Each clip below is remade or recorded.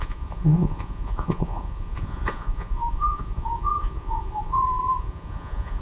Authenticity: remade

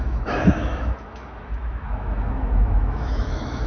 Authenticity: remade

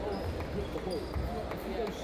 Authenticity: recorded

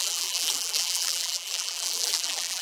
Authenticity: remade